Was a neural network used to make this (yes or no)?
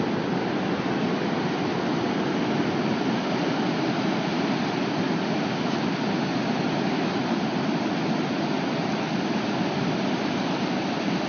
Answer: no